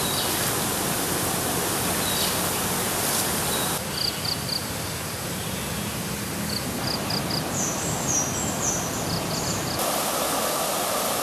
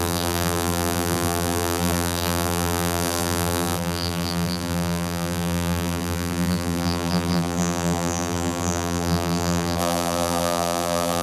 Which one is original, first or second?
first